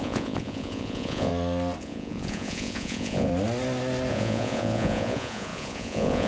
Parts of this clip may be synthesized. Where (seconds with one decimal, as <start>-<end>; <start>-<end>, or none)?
0.0-1.3; 1.8-3.3; 4.1-6.3